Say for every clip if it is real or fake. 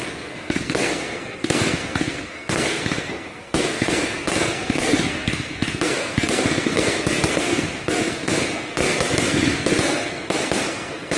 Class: fake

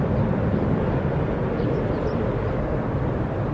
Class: real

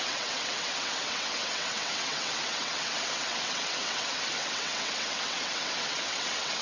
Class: fake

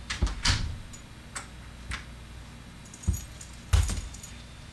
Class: real